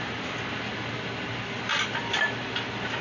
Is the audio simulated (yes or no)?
no